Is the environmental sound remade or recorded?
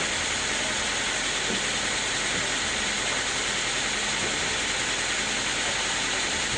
recorded